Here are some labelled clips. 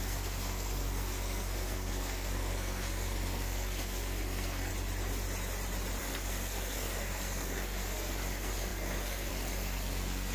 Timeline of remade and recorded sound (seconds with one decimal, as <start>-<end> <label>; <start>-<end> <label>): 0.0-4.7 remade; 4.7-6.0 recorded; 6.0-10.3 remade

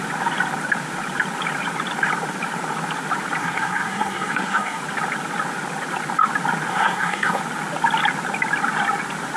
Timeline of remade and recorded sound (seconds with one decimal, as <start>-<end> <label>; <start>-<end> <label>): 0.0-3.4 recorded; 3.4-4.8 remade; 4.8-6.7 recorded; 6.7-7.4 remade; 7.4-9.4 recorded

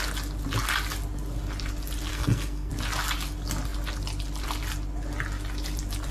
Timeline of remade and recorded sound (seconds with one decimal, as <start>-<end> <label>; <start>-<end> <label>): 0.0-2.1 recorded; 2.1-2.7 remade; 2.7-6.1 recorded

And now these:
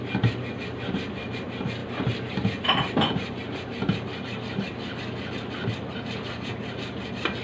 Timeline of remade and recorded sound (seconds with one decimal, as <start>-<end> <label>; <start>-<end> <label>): 0.0-7.4 recorded

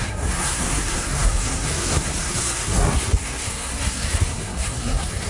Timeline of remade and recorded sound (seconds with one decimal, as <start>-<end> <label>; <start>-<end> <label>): 0.0-5.3 remade

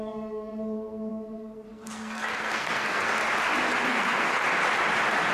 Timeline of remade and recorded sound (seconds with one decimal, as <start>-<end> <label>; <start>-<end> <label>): 0.0-3.2 remade; 3.2-3.9 recorded; 3.9-4.4 remade; 4.4-5.3 recorded

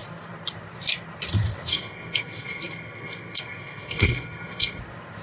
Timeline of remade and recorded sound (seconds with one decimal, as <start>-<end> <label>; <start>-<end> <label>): 0.0-1.7 recorded; 1.7-4.8 remade; 4.8-5.2 recorded